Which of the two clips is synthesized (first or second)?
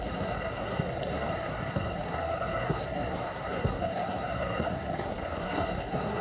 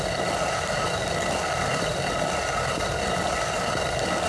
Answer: first